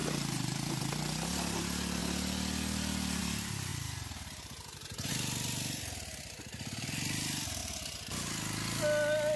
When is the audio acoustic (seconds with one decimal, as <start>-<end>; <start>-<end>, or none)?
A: 0.8-3.7; 5.1-9.4